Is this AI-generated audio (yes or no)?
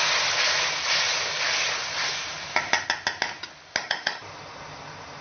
no